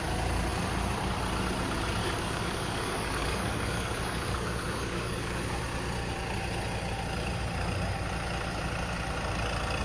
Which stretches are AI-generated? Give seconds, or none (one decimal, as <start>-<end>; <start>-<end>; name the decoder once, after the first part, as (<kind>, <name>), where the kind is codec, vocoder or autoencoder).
2.0-5.6 (codec, DAC)